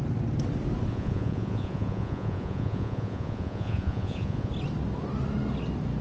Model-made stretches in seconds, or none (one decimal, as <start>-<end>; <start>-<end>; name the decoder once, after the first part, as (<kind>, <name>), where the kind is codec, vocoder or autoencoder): 0.9-4.5 (vocoder, Vocos)